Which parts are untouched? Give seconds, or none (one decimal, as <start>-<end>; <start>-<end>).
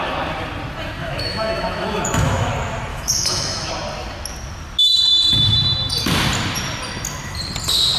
0.0-1.0; 2.5-2.9; 3.7-8.0